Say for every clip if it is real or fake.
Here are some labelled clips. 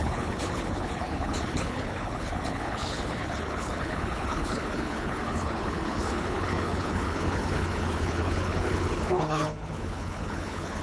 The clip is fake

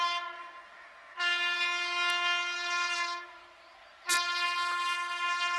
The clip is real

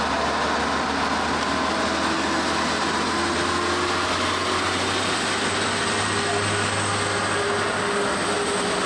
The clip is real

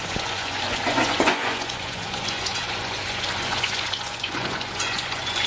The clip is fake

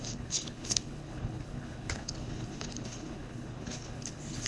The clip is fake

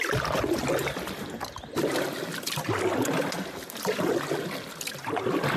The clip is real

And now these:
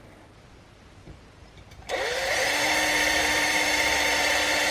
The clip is fake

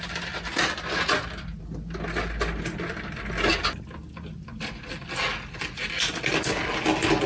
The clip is real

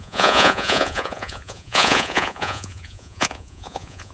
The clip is fake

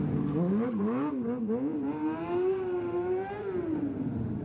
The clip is real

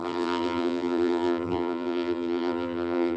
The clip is fake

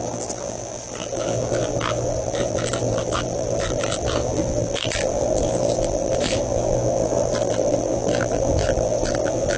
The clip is fake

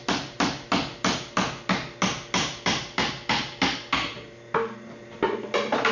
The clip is real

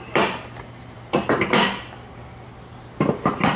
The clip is real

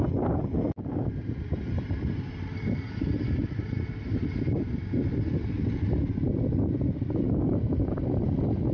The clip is real